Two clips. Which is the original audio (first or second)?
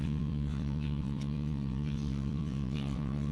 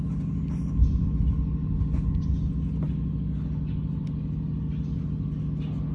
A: second